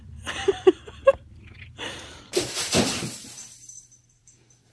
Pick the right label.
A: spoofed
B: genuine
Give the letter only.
A